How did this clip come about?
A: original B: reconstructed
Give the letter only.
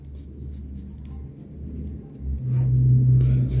A